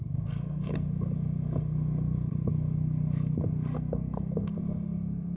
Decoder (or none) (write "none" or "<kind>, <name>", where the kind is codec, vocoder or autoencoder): codec, SNAC